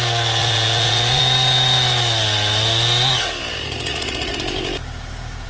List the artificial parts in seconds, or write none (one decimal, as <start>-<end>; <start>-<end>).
0.4-1.2; 3.9-4.4